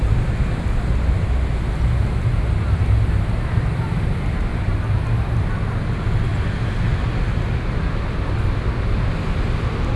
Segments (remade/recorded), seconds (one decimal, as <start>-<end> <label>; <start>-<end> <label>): 0.0-10.0 recorded